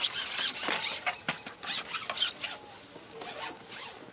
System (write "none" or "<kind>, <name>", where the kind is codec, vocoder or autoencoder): none